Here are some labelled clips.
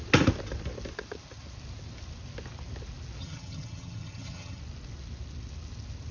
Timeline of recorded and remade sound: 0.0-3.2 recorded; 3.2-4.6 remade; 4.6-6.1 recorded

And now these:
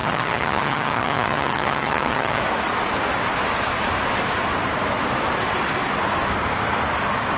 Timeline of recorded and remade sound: 0.0-2.4 remade; 2.4-7.4 recorded

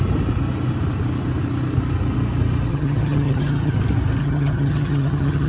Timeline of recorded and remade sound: 0.0-2.7 recorded; 2.7-3.7 remade; 3.7-4.2 recorded; 4.2-5.5 remade

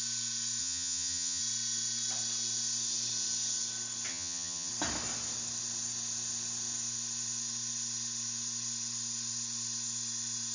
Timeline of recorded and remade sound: 0.0-0.6 recorded; 0.6-1.4 remade; 1.4-4.1 recorded; 4.1-4.7 remade; 4.7-10.5 recorded

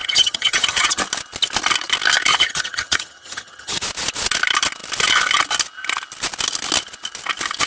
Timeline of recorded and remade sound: 0.0-1.0 remade; 1.0-2.3 recorded; 2.3-3.8 remade; 3.8-7.7 recorded

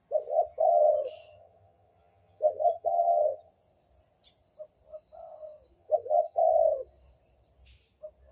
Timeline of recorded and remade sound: 0.0-0.7 recorded; 0.7-3.5 remade; 3.5-5.8 recorded; 5.8-6.4 remade; 6.4-8.3 recorded